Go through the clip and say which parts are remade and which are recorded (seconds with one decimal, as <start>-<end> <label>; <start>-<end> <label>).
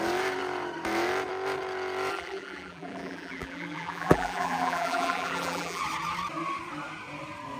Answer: 0.0-2.1 recorded; 2.1-5.8 remade; 5.8-7.6 recorded